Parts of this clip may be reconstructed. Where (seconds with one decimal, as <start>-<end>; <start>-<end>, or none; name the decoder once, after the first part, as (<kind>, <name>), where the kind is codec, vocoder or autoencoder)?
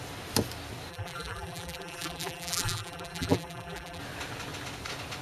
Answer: 0.9-4.0 (vocoder, BigVGAN v2)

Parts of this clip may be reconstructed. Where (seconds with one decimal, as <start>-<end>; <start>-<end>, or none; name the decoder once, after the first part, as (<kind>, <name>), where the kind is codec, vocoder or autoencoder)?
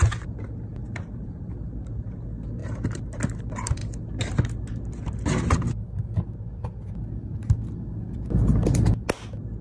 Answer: none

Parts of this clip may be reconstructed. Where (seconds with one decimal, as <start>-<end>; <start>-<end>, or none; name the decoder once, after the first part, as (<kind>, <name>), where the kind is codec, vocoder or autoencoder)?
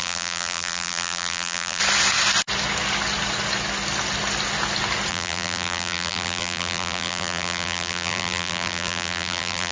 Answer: 0.0-1.8 (vocoder, BigVGAN v2); 5.1-9.7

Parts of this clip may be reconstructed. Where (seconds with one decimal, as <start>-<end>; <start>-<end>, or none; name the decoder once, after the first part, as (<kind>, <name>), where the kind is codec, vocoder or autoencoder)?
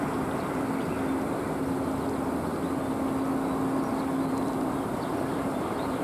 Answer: 0.0-0.9 (vocoder, BigVGAN v2); 4.3-6.0